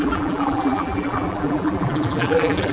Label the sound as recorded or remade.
remade